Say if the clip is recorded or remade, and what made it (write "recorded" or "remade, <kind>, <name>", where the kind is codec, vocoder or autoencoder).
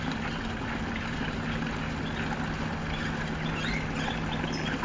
recorded